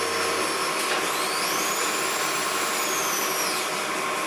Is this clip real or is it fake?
real